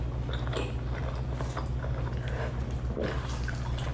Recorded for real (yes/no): yes